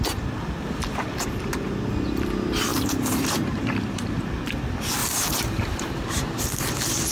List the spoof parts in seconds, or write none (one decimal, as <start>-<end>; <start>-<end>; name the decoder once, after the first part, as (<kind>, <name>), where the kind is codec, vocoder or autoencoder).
2.7-4.2 (vocoder, BigVGAN v2); 5.0-6.4